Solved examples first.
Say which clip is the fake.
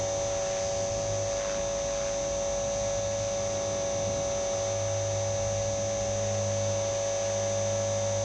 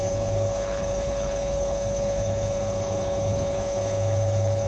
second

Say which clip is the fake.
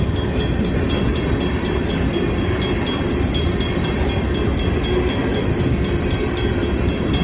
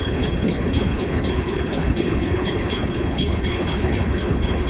second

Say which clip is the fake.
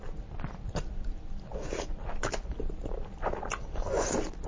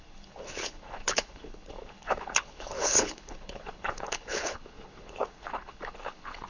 second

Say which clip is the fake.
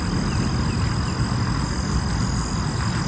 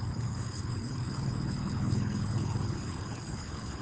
second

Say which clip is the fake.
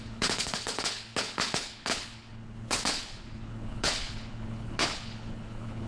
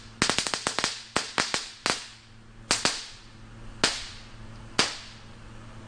first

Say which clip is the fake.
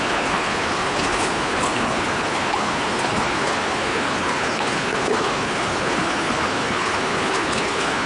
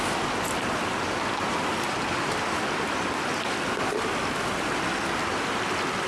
first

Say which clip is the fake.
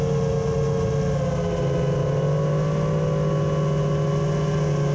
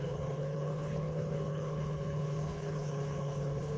second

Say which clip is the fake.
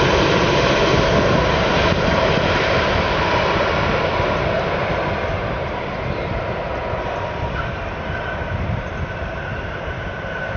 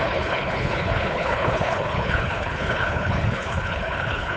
second